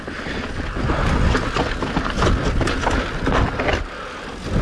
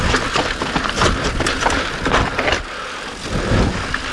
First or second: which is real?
first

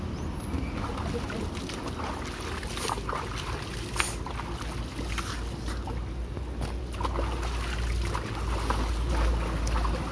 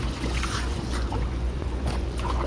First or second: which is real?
first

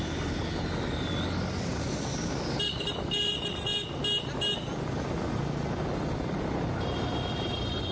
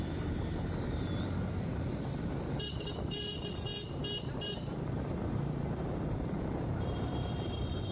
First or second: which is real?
first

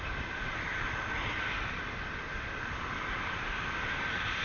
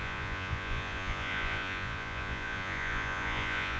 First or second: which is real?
first